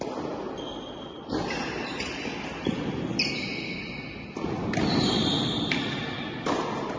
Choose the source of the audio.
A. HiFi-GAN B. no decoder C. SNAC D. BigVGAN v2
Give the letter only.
B